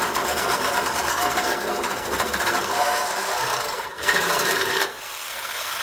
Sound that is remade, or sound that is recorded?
remade